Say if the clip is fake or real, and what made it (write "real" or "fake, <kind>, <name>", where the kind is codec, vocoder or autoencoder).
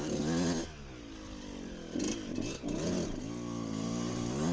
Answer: real